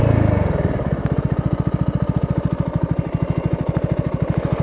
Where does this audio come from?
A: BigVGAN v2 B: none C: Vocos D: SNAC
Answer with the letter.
B